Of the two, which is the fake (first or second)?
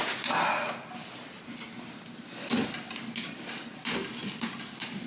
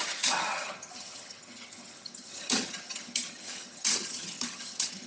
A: second